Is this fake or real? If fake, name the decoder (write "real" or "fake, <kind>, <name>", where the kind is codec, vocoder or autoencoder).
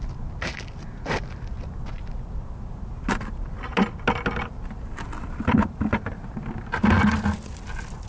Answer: real